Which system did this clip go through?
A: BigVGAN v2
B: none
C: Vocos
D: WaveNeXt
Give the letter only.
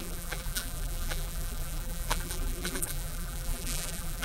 A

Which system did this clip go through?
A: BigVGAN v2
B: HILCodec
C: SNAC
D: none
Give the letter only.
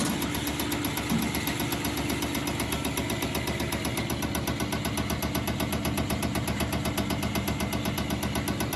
D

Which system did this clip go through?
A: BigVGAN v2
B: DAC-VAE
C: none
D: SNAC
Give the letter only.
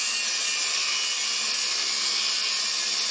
C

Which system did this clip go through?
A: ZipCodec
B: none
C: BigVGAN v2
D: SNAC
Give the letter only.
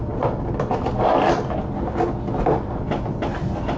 B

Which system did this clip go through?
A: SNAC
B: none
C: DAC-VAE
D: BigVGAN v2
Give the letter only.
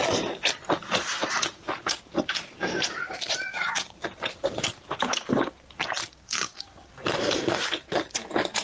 D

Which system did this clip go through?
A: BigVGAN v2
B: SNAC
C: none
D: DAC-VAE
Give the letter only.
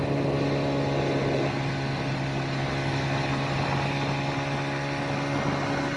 C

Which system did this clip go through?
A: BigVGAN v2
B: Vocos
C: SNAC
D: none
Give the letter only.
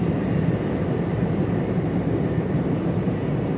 D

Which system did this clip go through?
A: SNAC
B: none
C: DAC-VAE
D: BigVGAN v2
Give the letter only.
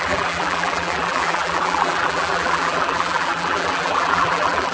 D